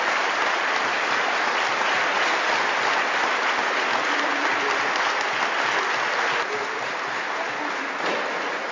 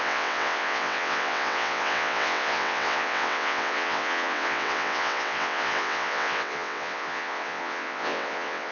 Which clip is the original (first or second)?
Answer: first